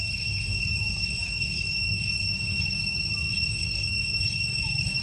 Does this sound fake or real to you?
fake